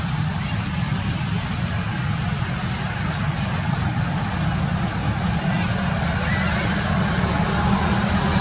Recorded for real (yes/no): yes